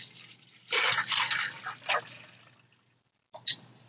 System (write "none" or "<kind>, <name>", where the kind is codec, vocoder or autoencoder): none